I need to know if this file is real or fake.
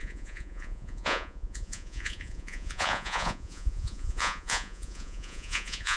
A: fake